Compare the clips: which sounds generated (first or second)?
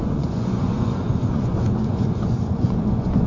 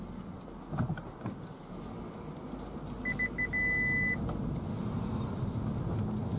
first